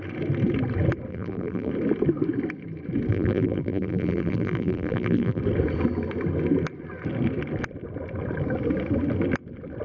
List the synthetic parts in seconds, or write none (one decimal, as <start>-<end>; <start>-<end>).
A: 1.1-1.7; 3.1-5.4